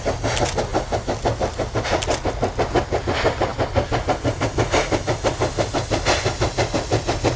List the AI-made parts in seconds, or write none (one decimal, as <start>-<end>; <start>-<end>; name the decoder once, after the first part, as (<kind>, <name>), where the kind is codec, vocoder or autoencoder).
none